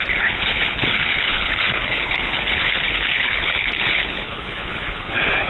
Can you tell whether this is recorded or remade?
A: remade